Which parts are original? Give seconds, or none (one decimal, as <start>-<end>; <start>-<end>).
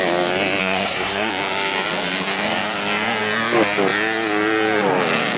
0.0-0.6; 1.3-5.4